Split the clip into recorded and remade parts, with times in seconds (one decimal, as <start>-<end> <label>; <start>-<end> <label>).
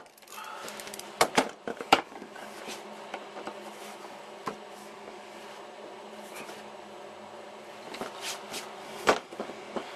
0.0-1.7 recorded; 1.7-2.6 remade; 2.6-4.8 recorded; 4.8-5.4 remade; 5.4-8.8 recorded; 8.8-10.0 remade